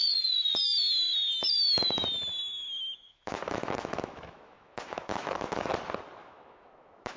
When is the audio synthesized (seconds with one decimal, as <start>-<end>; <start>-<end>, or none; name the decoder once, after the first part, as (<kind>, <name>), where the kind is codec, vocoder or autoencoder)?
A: 2.4-5.7 (autoencoder, DAC-VAE); 6.2-7.2